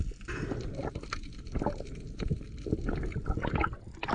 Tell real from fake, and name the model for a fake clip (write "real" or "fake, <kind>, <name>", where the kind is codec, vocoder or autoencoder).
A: real